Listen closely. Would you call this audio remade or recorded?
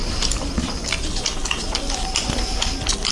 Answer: recorded